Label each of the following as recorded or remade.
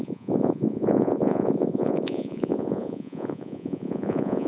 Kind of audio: remade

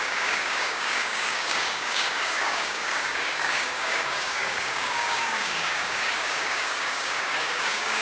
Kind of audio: remade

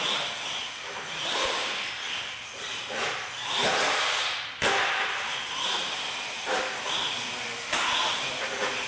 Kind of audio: recorded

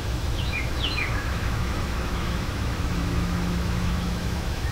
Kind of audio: remade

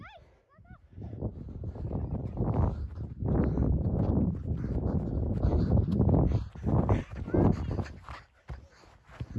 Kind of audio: recorded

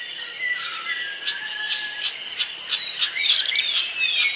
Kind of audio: recorded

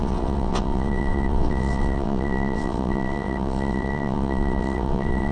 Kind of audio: remade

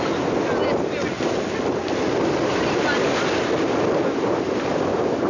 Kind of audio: recorded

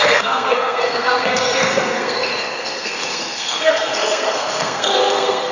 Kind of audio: remade